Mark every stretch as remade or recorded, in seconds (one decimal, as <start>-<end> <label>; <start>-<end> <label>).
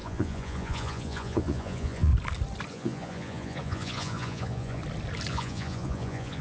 0.0-2.1 remade; 2.1-2.7 recorded; 2.7-4.8 remade; 4.8-5.3 recorded; 5.3-6.4 remade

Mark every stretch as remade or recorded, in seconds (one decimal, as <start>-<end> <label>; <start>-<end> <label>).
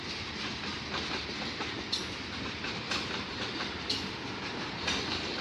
0.0-5.4 recorded